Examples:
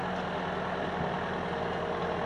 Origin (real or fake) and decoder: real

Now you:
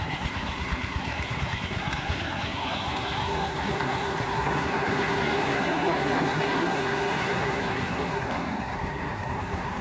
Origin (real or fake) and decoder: fake, codec, SNAC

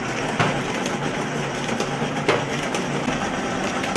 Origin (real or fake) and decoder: real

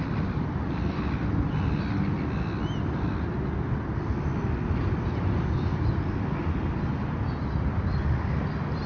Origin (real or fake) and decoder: real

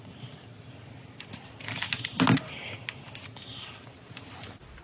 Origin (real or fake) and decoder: real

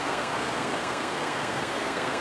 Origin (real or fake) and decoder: fake, codec, SNAC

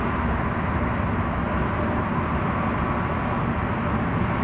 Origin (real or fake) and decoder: real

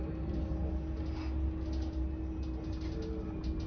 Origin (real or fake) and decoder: real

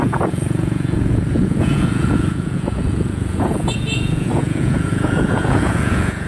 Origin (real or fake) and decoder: fake, vocoder, Vocos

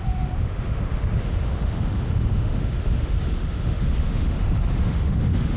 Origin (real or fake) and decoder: fake, autoencoder, DAC-VAE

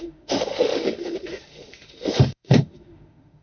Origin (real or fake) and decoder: fake, autoencoder, DAC-VAE